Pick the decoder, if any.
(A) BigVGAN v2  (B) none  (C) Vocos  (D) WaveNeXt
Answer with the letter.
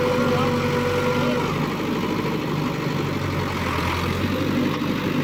B